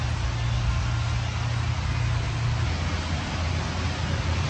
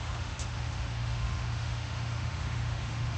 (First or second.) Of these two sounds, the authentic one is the first